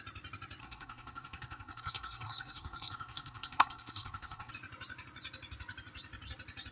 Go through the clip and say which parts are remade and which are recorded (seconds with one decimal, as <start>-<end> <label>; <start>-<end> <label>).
0.0-0.6 recorded; 0.6-4.5 remade; 4.5-6.7 recorded